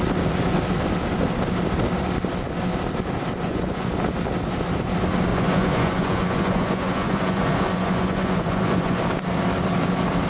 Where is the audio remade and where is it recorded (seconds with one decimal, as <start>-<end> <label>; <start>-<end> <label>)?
0.0-3.4 recorded; 3.4-3.9 remade; 3.9-5.3 recorded; 5.3-9.0 remade; 9.0-10.3 recorded

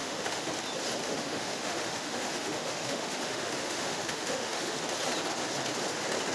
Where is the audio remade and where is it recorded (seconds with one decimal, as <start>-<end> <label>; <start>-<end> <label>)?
0.0-0.5 remade; 0.5-1.0 recorded; 1.0-4.8 remade; 4.8-6.3 recorded